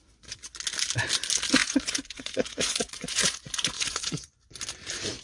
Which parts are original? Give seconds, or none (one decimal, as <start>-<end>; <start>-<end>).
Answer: 0.0-1.6; 4.5-5.2